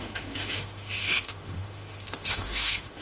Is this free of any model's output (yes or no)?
no